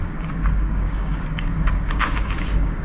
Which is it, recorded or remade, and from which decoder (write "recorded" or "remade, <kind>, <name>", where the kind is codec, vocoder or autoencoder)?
remade, codec, DAC